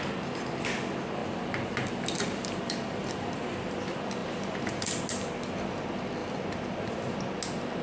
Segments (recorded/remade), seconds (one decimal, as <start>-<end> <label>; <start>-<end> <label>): 0.0-1.2 recorded; 1.2-3.7 remade; 3.7-7.8 recorded